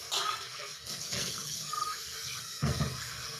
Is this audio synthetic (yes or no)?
yes